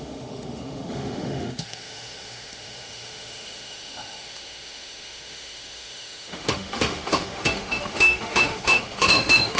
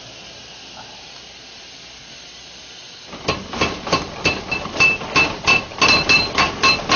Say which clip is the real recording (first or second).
second